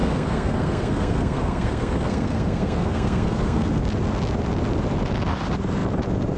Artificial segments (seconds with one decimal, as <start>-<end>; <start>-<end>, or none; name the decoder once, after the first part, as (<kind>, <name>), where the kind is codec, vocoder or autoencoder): 0.0-3.8 (codec, SNAC)

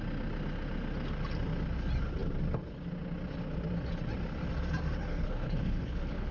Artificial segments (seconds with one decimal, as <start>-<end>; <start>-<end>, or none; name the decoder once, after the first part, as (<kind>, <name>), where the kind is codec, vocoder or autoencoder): 5.1-6.3 (codec, HILCodec)

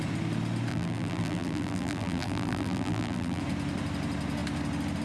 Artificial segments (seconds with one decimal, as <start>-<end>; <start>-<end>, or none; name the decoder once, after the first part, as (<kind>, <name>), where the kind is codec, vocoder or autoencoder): 0.7-3.4 (vocoder, BigVGAN v2)

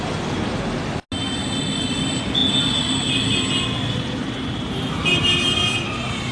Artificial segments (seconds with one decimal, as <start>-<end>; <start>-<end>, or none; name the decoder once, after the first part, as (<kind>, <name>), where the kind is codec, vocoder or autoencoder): none

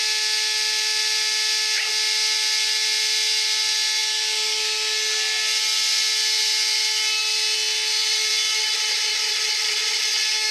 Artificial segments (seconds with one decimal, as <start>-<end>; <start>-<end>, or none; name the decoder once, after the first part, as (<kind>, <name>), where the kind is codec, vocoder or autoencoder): none

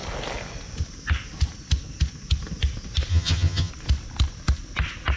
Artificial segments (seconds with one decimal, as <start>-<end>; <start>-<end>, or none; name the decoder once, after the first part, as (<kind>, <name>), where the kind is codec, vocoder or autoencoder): 3.1-3.7 (vocoder, HiFi-GAN)

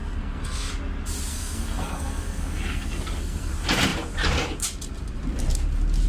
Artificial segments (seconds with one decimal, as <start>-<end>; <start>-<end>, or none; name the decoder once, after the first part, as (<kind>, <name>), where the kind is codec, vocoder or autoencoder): 0.0-0.7 (codec, SNAC); 1.3-3.5

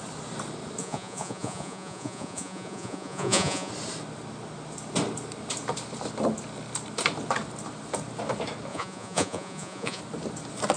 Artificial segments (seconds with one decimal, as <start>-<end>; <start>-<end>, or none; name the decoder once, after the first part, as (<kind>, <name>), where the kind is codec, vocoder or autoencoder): 0.8-3.7 (vocoder, Vocos); 8.7-10.0